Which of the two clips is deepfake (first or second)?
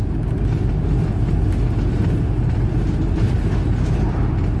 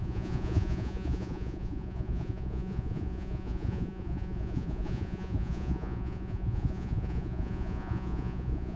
second